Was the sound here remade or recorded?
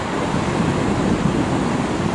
recorded